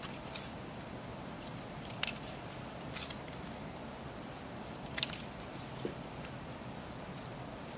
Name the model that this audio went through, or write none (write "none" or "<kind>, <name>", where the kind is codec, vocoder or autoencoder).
vocoder, BigVGAN v2